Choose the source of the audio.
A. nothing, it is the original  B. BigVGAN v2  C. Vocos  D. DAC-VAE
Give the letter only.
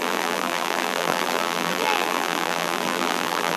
B